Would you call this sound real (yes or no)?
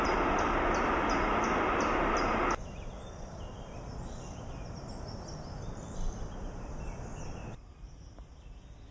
yes